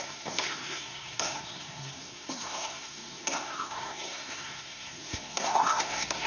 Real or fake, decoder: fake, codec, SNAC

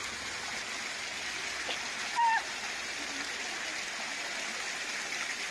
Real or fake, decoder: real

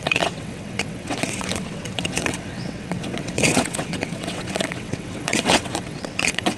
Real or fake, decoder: fake, vocoder, WaveNeXt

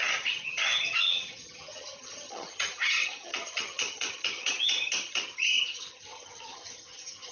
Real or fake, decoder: fake, vocoder, HiFi-GAN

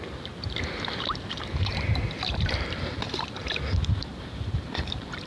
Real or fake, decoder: fake, vocoder, BigVGAN v2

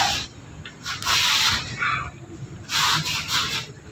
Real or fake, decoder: real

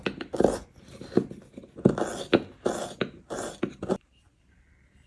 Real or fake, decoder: real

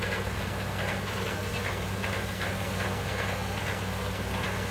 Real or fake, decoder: fake, codec, SNAC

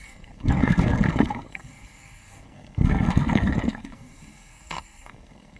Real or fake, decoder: fake, codec, SNAC